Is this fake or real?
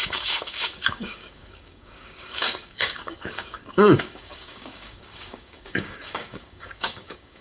fake